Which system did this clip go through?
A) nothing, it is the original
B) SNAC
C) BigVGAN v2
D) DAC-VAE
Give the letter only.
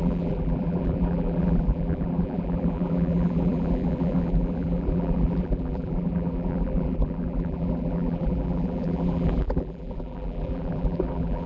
C